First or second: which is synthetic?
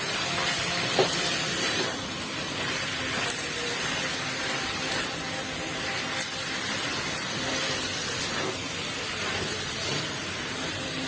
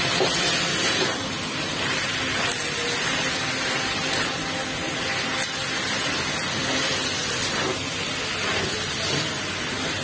first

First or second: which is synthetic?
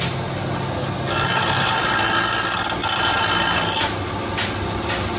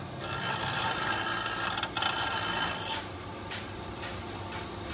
second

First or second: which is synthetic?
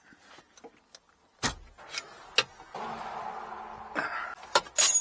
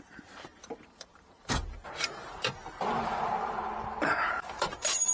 second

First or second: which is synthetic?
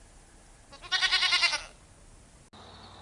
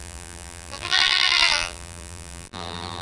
second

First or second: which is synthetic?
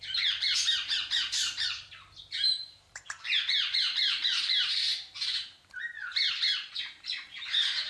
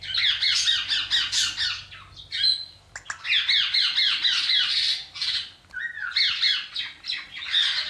first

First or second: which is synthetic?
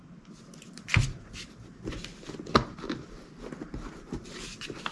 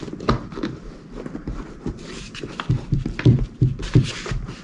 second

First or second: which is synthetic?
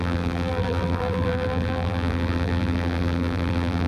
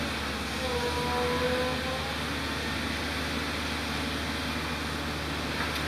first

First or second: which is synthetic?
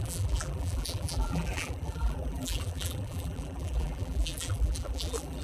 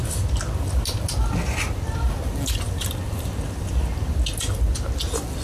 first